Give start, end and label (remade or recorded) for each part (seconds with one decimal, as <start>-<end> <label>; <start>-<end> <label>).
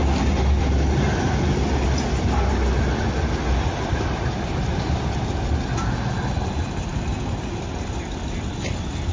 0.0-9.1 recorded